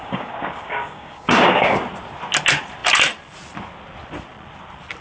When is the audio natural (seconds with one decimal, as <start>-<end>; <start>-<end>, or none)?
1.8-5.0